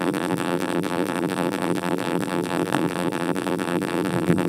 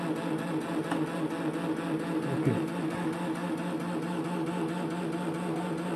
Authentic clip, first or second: second